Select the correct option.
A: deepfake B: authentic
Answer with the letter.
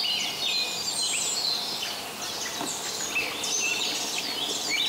B